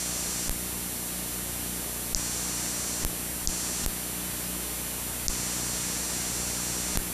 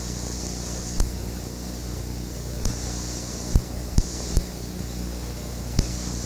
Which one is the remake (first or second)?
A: second